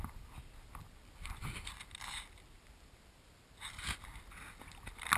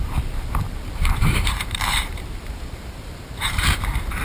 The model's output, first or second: second